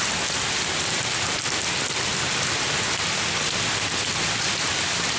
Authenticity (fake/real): real